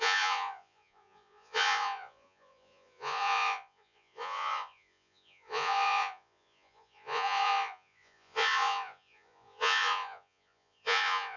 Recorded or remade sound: remade